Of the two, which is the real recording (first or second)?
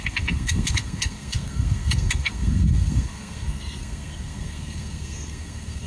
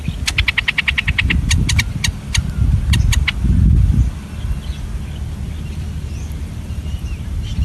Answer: second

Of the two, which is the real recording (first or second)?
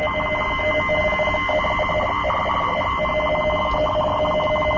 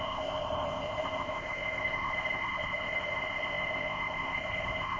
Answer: first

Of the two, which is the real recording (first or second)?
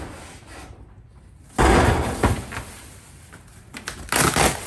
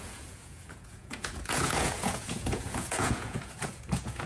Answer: first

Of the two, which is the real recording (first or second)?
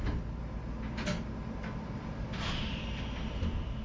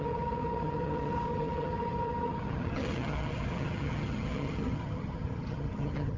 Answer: first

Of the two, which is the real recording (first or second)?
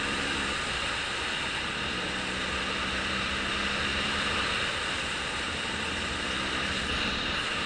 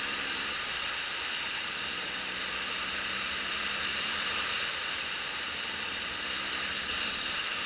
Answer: first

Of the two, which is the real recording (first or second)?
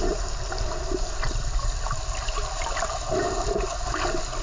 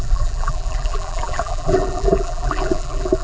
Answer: first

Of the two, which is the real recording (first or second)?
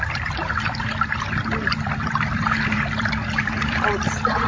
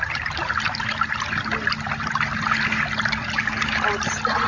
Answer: second